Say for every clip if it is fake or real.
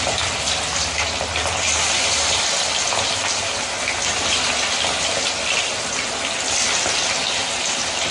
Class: real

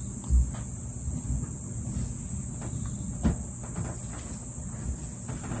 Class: real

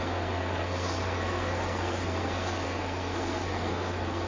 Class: fake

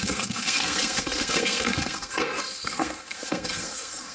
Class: fake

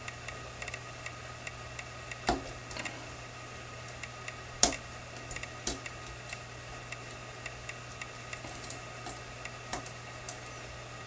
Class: real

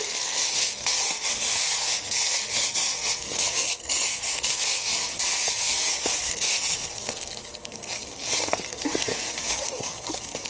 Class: fake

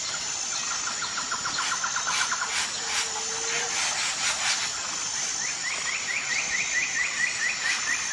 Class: real